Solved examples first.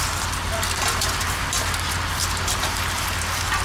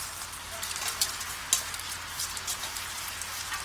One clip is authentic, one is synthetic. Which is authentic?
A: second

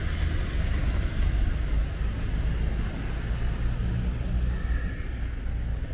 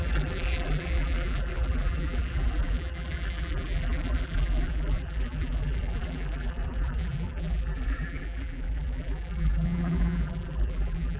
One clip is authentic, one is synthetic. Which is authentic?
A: first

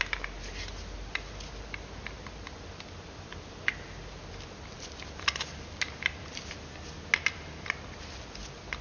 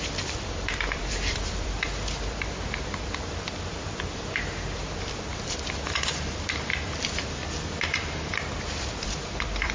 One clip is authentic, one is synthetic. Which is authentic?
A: first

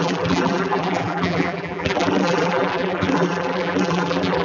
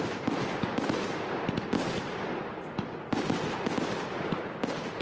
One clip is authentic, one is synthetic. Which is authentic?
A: second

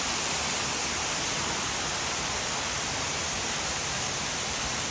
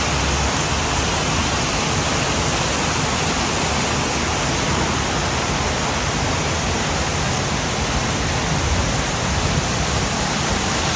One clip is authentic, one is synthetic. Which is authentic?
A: second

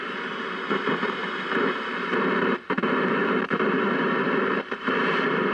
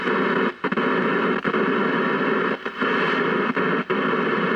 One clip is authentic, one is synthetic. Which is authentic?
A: second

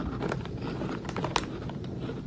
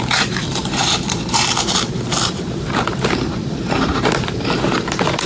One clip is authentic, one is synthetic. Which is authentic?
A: first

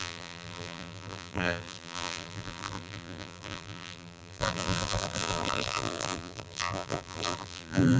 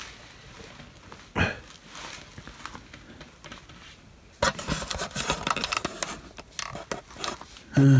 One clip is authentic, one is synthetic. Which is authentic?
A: second